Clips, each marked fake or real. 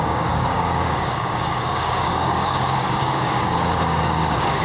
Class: fake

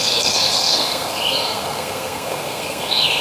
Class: fake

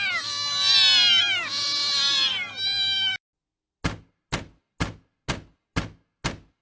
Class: real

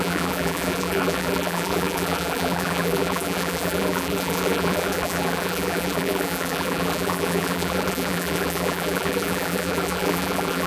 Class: fake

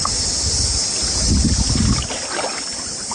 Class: real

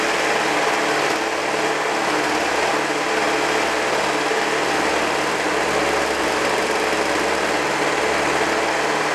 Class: real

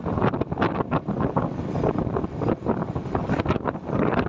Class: real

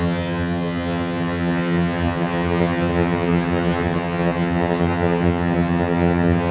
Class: fake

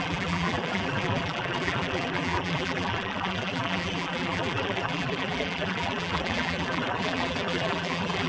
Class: fake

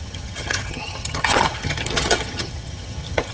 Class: fake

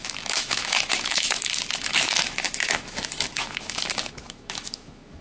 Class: fake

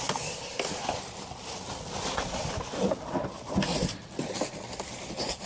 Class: real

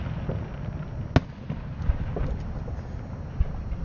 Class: real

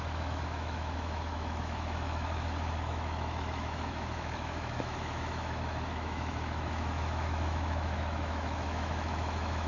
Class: fake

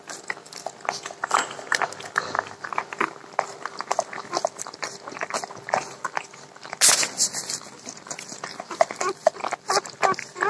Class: real